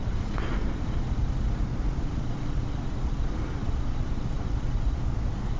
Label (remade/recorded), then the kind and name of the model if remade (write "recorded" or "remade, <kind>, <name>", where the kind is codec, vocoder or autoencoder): remade, vocoder, Vocos